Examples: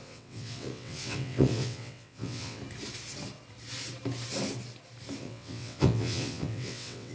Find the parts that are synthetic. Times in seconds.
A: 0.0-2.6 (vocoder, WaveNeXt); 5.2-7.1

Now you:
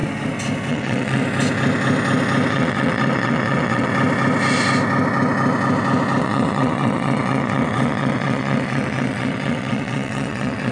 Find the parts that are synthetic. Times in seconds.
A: 0.7-1.2 (vocoder, WaveNeXt); 2.5-3.9; 6.2-10.7

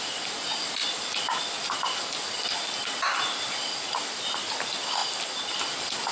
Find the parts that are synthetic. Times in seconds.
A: none

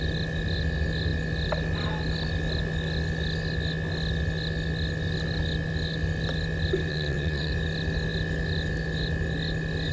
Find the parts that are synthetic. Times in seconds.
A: 6.9-7.5 (vocoder, WaveNeXt)

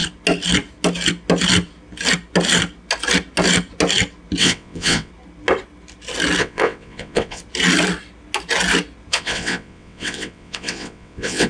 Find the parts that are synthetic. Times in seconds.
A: 4.4-5.1 (vocoder, WaveNeXt); 6.4-7.4; 9.1-11.5